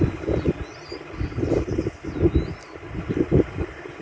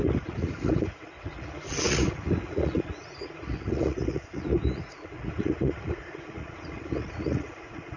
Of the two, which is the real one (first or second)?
first